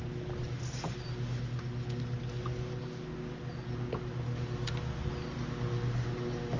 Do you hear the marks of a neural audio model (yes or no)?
no